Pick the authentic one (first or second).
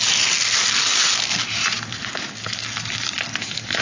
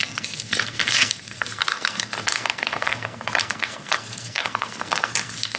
first